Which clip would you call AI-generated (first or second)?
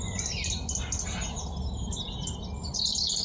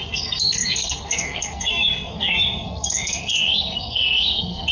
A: second